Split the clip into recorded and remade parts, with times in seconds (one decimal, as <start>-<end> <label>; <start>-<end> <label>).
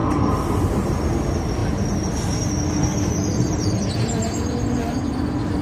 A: 0.0-1.6 remade; 1.6-5.0 recorded; 5.0-5.6 remade